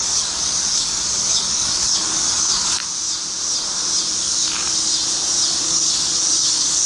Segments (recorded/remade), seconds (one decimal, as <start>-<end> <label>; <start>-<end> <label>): 0.0-2.8 remade; 2.8-4.2 recorded; 4.2-4.9 remade; 4.9-5.6 recorded; 5.6-6.9 remade